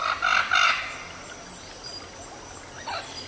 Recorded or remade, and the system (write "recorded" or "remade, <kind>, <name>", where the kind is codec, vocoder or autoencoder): recorded